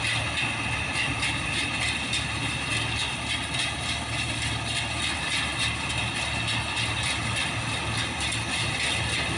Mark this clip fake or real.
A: real